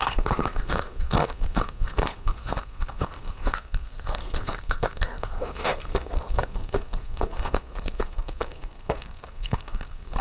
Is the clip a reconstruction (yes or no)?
yes